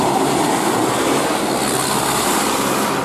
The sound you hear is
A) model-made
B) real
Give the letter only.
B